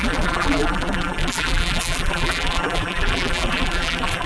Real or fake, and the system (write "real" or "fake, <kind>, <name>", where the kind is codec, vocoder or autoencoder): fake, vocoder, BigVGAN v2